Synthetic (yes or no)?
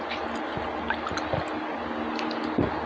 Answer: no